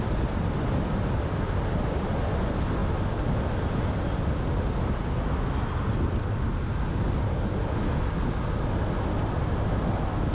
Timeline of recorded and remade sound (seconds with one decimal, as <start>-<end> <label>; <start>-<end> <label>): 0.0-10.3 recorded